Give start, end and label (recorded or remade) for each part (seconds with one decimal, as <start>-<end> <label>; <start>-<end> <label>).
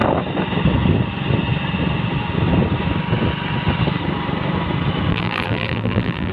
0.0-5.1 recorded; 5.1-6.3 remade